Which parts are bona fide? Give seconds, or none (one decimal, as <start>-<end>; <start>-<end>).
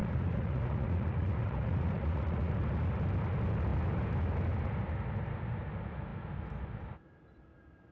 2.5-7.9